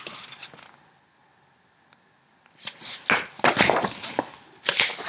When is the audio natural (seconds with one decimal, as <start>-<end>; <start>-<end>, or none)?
0.0-5.1